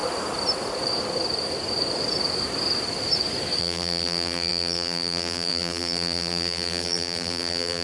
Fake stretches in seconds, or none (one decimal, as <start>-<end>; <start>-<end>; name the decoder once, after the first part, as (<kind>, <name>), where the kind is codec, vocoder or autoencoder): 3.6-7.8 (vocoder, BigVGAN v2)